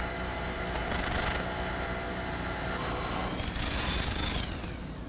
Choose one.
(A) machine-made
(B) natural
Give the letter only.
B